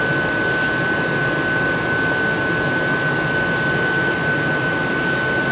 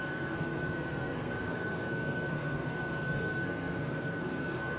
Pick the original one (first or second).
first